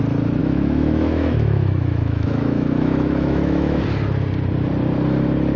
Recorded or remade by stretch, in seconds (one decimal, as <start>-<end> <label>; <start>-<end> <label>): 0.0-0.4 recorded; 0.4-3.8 remade; 3.8-5.6 recorded